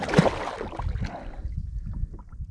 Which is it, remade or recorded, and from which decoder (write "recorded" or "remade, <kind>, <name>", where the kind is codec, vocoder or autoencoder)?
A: recorded